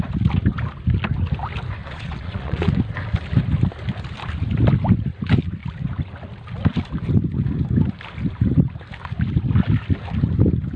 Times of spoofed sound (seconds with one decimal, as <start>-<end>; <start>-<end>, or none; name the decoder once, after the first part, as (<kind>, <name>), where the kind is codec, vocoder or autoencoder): 1.8-2.7 (vocoder, Vocos)